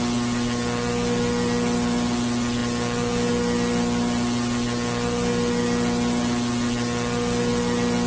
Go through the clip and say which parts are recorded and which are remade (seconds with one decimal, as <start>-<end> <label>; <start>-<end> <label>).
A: 0.0-8.1 recorded